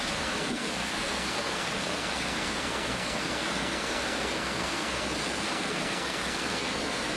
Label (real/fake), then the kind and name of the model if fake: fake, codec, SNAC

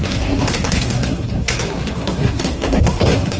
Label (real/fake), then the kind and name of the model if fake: fake, codec, SNAC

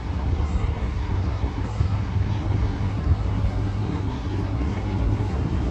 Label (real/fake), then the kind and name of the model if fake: fake, codec, SNAC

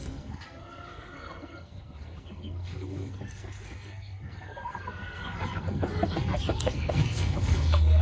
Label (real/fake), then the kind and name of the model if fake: fake, codec, SNAC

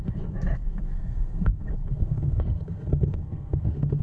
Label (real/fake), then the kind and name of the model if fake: fake, codec, SNAC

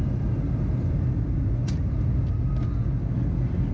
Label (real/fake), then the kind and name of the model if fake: real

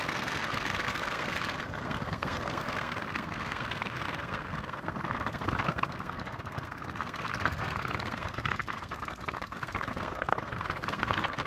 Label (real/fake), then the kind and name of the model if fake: fake, codec, SNAC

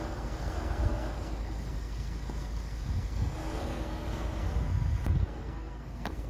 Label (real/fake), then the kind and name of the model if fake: fake, codec, SNAC